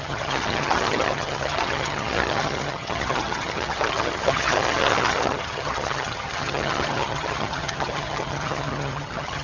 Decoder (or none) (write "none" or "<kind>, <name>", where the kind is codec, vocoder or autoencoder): vocoder, HiFi-GAN